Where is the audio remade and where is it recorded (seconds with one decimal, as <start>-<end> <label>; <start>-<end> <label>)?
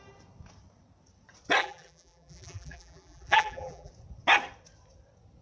0.0-1.6 recorded; 1.6-3.9 remade; 3.9-5.4 recorded